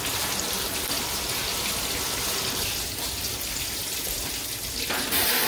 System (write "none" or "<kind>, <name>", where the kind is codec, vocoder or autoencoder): none